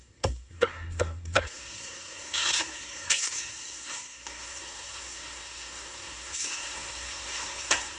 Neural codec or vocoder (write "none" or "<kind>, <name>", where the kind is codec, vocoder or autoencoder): codec, SNAC